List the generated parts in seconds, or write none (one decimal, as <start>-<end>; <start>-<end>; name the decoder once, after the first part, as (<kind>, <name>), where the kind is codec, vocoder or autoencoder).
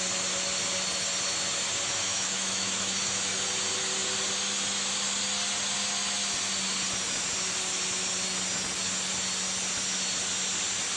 2.0-3.3 (autoencoder, DAC-VAE)